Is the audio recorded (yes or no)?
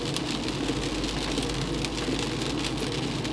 yes